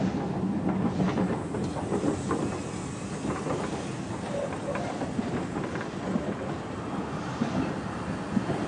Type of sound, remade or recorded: recorded